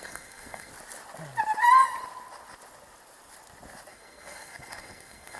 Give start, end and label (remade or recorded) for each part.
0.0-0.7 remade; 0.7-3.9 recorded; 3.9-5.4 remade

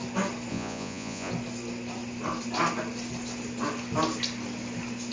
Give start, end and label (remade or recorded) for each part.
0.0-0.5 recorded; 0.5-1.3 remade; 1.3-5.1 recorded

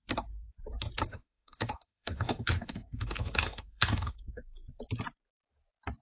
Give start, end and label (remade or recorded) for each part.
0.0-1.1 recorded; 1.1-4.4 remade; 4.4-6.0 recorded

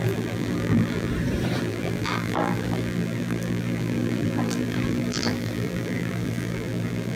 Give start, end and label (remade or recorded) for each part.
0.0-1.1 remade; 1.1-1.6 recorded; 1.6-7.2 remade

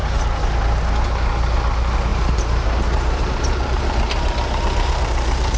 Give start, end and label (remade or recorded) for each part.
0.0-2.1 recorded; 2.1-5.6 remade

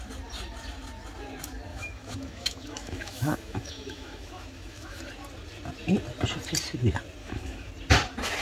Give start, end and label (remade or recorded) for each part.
0.0-1.7 recorded; 1.7-5.0 remade; 5.0-7.2 recorded; 7.2-7.7 remade; 7.7-8.4 recorded